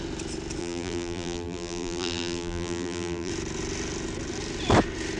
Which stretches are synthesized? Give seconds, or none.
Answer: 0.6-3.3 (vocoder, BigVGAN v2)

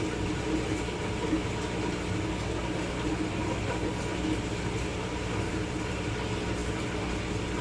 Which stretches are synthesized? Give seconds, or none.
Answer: 4.9-6.1 (vocoder, BigVGAN v2)

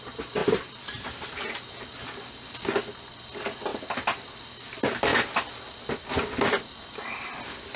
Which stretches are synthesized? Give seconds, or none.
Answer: 0.4-1.8 (vocoder, BigVGAN v2)

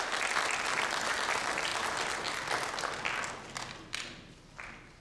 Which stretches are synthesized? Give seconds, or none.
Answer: none

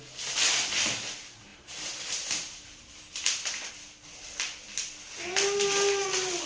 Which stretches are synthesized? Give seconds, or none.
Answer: 1.5-3.7 (vocoder, BigVGAN v2)

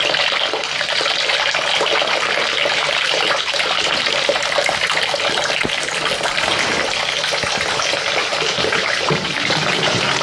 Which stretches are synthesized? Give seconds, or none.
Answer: 2.6-4.5 (vocoder, BigVGAN v2); 8.2-10.2

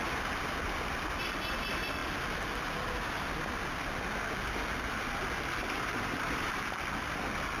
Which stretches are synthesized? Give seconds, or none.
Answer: 5.6-6.8 (vocoder, BigVGAN v2)